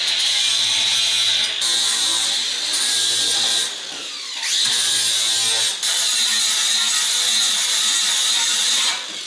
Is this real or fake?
real